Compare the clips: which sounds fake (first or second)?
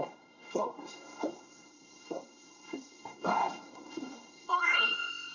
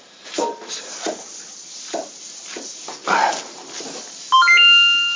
first